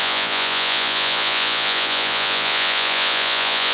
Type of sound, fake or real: fake